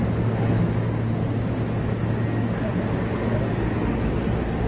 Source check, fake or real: real